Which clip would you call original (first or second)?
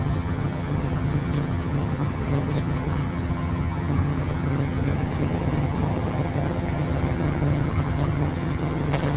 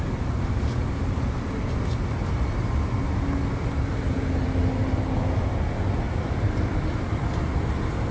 second